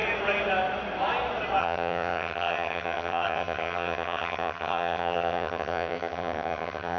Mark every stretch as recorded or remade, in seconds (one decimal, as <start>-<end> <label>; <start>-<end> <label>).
0.0-1.6 recorded; 1.6-7.0 remade